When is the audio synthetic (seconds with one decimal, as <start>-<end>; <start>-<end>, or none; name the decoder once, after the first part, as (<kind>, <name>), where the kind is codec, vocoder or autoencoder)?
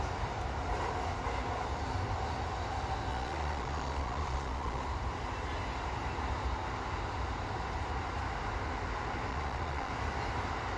3.1-4.8 (vocoder, Vocos); 9.3-9.9